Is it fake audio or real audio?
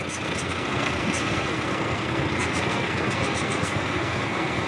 fake